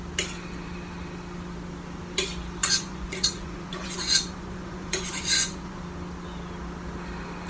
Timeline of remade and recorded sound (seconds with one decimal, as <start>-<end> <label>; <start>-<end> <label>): 0.0-2.6 recorded; 2.6-5.8 remade; 5.8-7.5 recorded